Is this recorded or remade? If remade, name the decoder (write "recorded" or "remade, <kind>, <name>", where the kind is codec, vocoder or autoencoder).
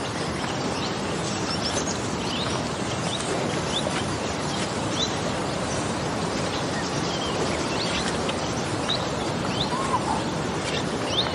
remade, vocoder, BigVGAN v2